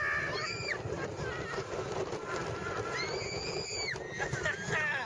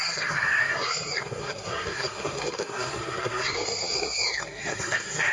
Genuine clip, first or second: first